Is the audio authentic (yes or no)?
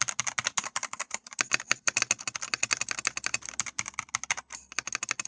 yes